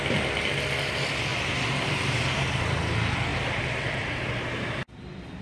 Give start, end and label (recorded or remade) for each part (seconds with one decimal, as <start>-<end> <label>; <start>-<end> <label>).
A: 0.0-1.3 recorded; 1.3-2.2 remade; 2.2-5.4 recorded